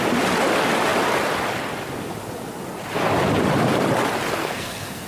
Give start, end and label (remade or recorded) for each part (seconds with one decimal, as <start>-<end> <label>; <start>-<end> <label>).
0.0-4.4 recorded; 4.4-5.1 remade